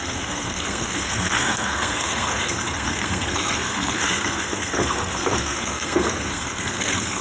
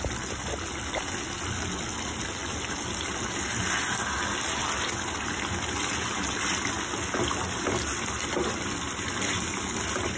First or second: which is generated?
first